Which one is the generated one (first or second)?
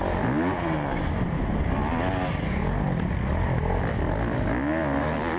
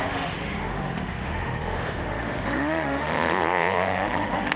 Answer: second